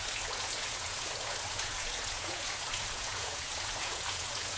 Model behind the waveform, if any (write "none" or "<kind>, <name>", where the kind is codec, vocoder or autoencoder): vocoder, Vocos